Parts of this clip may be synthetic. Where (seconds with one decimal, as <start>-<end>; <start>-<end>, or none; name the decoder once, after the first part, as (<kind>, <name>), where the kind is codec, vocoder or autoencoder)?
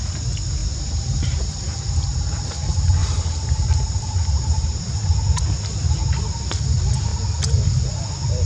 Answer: 0.6-1.2 (vocoder, BigVGAN v2); 3.0-5.1